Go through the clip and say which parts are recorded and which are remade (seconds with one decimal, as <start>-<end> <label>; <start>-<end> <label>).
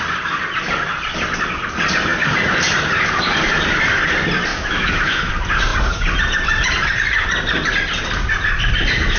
0.0-4.5 recorded; 4.5-5.3 remade; 5.3-9.2 recorded